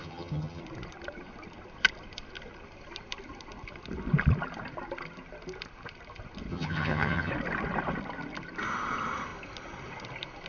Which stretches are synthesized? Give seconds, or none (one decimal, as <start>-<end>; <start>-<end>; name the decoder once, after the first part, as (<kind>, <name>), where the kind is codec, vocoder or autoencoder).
0.0-0.6 (vocoder, HiFi-GAN); 6.5-7.3